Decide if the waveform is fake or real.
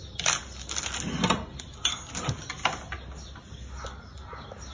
real